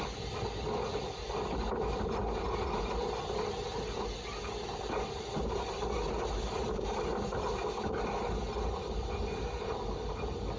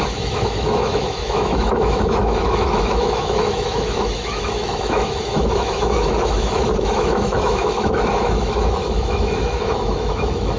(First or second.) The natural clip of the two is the first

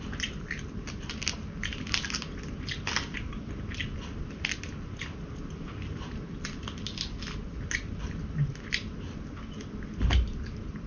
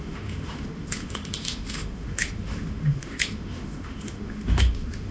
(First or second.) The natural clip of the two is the first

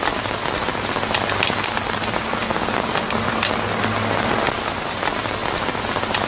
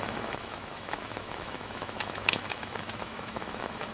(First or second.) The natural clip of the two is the first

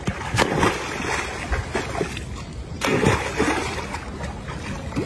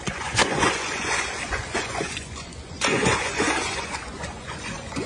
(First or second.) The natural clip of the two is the first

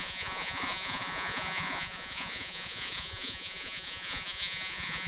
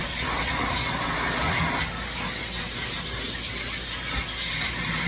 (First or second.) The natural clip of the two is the second